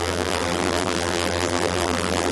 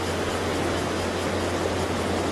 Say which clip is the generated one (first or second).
first